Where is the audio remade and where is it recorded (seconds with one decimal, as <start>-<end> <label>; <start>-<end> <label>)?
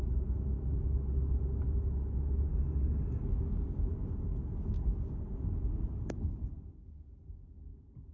0.0-2.5 recorded; 2.5-3.2 remade; 3.2-8.1 recorded